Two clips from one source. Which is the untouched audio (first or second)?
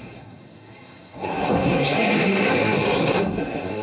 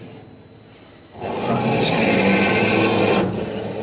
second